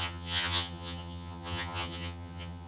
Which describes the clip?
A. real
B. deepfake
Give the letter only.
B